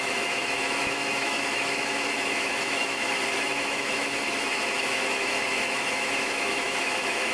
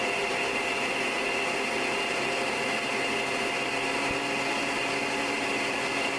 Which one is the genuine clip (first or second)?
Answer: second